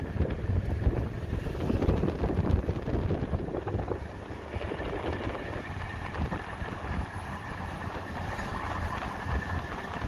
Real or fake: real